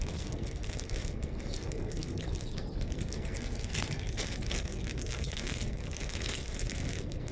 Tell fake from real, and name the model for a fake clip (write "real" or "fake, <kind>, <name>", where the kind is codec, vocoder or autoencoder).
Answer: fake, codec, SNAC